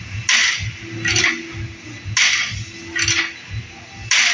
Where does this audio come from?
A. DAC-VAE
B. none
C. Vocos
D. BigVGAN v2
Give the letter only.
B